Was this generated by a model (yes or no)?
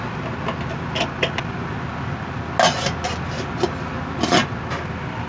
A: no